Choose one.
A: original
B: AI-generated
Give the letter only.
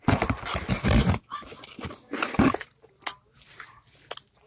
A